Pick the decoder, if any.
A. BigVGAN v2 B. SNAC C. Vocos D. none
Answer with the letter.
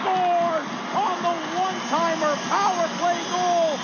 D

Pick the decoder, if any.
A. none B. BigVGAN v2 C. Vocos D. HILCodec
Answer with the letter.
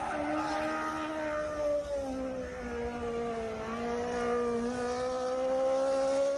A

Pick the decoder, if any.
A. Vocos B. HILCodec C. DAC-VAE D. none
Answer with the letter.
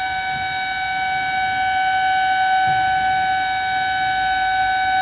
D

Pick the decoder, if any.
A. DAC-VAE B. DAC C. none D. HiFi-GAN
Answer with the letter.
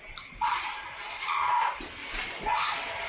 C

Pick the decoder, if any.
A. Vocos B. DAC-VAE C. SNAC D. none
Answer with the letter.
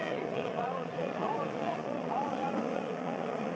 A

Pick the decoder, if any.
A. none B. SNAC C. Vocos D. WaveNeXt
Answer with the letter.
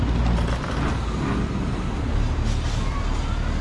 A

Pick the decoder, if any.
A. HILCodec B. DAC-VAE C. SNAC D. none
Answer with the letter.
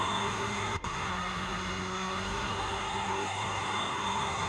C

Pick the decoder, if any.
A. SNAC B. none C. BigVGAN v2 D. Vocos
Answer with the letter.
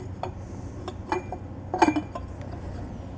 B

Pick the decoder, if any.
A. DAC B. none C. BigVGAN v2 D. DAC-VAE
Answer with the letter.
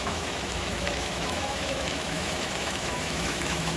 D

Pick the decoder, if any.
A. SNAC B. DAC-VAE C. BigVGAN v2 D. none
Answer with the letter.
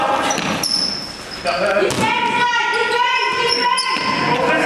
D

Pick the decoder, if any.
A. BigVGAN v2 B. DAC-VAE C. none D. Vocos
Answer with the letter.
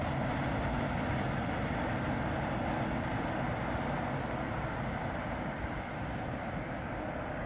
C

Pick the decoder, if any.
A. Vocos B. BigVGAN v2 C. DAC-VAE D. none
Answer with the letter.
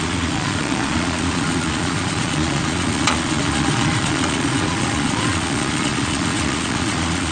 A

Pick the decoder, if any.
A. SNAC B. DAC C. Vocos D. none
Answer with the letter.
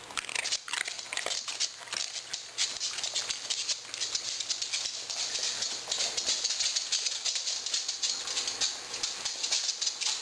D